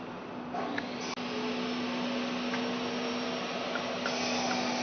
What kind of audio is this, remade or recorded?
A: recorded